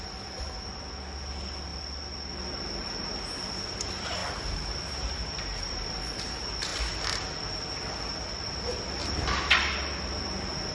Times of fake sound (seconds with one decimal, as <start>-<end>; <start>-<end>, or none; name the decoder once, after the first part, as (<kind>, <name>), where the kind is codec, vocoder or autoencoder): none